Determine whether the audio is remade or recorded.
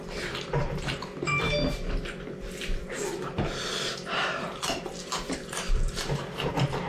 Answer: remade